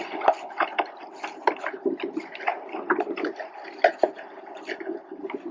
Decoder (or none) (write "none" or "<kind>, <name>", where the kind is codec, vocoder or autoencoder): none